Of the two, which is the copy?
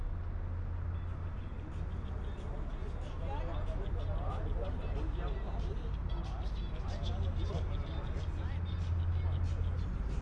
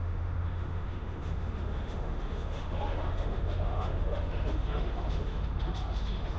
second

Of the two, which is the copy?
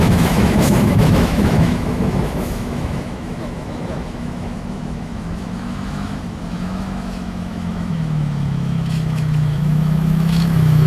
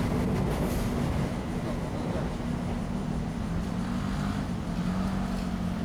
first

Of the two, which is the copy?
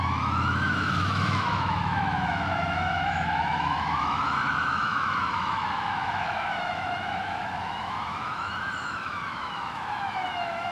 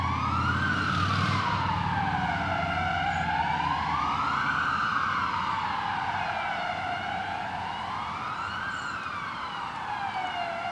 first